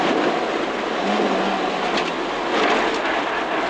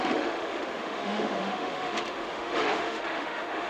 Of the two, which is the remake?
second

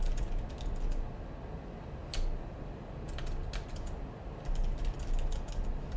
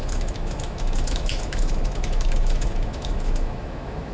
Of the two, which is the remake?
second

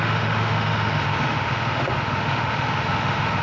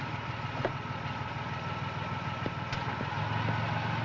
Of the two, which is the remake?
first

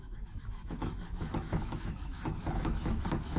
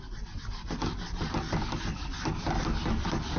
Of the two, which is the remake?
first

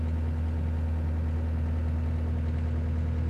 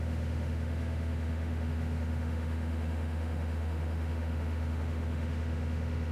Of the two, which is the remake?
second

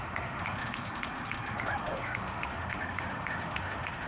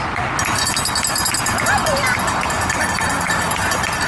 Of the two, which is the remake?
first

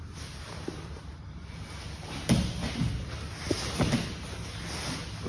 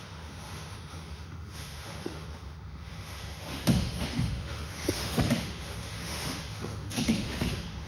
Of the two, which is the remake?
second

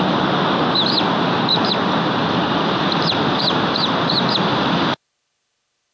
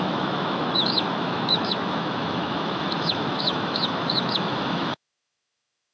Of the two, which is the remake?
second